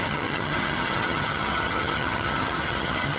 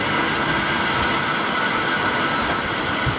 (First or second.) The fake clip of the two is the first